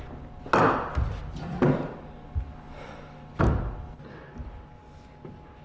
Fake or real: real